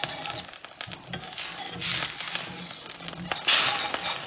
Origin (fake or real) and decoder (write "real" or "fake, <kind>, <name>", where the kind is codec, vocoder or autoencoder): real